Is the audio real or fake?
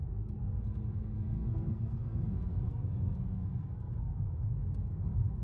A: fake